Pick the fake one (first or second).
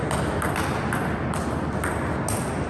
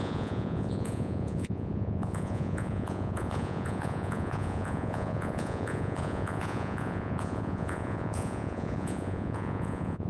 second